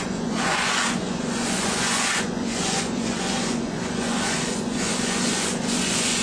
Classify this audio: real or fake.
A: fake